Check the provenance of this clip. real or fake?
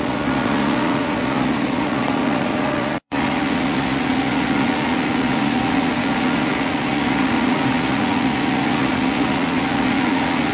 fake